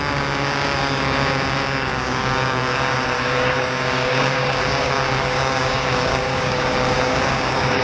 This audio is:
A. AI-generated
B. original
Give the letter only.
A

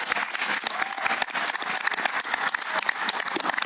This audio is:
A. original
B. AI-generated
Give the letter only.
A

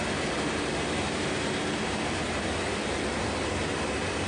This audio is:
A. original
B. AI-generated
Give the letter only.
A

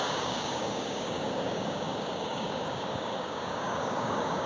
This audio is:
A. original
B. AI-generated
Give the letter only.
B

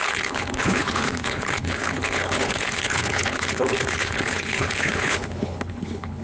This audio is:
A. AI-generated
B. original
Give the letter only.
A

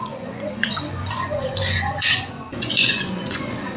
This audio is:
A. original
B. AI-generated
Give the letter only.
B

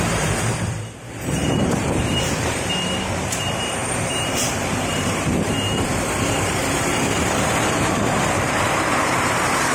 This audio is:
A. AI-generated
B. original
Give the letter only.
A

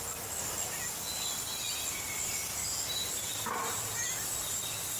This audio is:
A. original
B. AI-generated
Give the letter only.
A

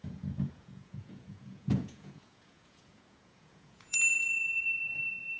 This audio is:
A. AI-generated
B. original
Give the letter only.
A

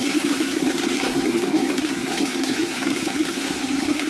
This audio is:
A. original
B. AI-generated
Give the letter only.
B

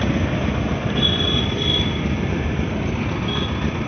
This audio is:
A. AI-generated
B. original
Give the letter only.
B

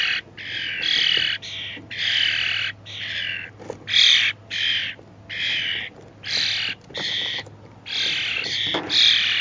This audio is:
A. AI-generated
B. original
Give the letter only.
B